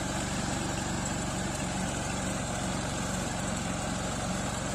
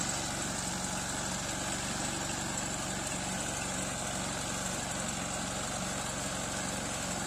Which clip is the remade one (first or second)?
first